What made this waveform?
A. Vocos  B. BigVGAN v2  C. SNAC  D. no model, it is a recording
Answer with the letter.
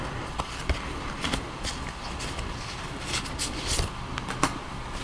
D